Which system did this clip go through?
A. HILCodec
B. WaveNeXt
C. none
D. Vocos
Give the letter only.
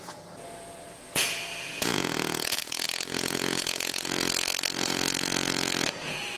D